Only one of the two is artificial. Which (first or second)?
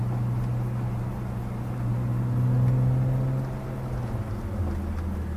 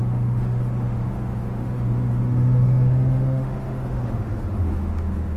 second